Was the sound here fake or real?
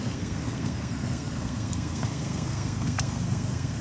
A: fake